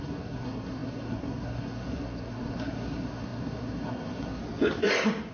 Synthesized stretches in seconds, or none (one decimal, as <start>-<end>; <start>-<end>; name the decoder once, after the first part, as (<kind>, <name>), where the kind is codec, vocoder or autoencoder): 0.0-4.4 (codec, SNAC)

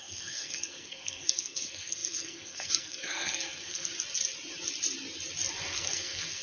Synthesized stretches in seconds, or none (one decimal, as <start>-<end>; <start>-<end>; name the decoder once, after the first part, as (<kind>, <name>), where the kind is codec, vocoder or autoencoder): 0.0-3.9 (codec, SNAC); 5.6-6.4

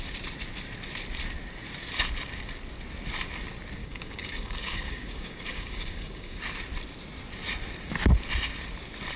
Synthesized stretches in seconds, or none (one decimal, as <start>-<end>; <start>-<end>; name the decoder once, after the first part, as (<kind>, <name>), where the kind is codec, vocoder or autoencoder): 3.8-6.4 (codec, DAC)

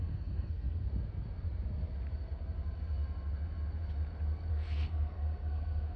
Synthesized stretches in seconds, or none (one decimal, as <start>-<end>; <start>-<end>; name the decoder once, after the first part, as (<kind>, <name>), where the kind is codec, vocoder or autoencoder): 0.0-0.9 (codec, SNAC); 4.5-6.0

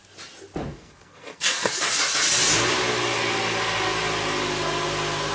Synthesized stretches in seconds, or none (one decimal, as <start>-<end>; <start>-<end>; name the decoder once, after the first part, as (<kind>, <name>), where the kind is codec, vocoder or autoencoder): 0.7-2.0 (codec, SNAC)

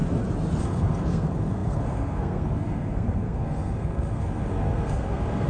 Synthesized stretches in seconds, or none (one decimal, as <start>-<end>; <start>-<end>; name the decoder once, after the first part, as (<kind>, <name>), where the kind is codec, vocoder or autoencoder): 0.6-5.5 (codec, SNAC)